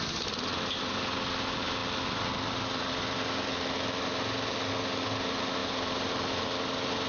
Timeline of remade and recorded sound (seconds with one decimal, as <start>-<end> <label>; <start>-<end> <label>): 0.0-5.6 recorded; 5.6-6.1 remade; 6.1-7.1 recorded